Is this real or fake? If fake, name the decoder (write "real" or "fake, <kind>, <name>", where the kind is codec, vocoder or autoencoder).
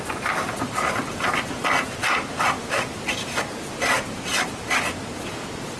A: real